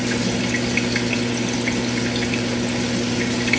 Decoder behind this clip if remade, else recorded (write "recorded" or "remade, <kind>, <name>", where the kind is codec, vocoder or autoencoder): recorded